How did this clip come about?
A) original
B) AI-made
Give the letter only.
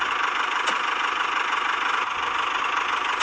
A